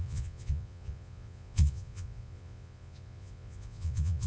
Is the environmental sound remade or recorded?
remade